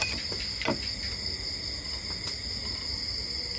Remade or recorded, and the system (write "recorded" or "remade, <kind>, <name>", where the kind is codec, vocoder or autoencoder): recorded